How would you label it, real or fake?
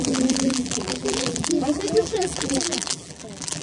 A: fake